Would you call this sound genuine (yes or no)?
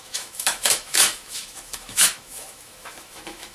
no